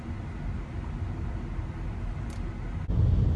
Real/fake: real